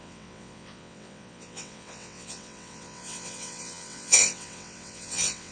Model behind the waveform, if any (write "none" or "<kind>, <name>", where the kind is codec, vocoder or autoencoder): vocoder, WaveNeXt